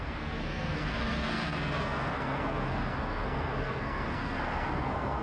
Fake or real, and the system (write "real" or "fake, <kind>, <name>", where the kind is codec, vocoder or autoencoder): fake, codec, SNAC